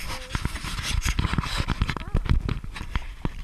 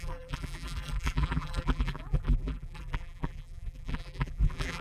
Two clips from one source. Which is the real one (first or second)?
first